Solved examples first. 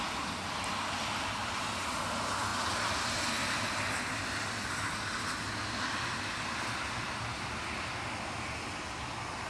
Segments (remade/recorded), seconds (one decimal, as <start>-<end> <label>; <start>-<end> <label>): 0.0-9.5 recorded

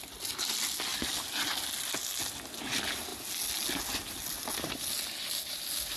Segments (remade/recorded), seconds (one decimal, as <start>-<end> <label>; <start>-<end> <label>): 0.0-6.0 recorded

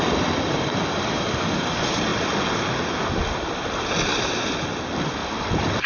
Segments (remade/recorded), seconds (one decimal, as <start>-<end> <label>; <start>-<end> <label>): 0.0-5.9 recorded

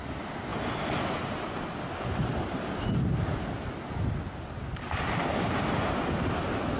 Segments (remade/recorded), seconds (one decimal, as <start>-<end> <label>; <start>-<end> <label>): 0.0-6.8 recorded